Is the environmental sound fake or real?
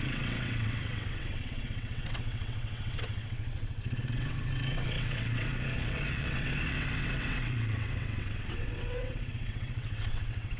fake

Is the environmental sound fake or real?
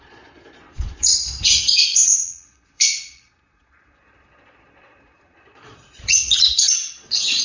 fake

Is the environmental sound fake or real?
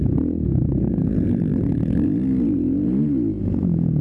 real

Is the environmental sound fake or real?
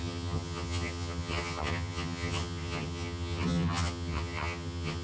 fake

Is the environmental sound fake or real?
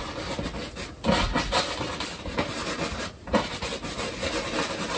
real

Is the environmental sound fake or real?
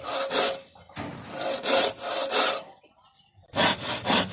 real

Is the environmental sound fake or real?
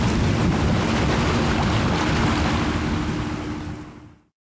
real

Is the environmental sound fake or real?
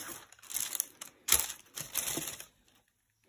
real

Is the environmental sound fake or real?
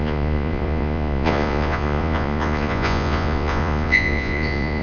fake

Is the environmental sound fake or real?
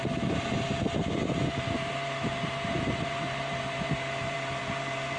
fake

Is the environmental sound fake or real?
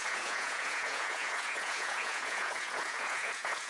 fake